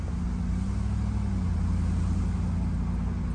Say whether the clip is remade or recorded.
recorded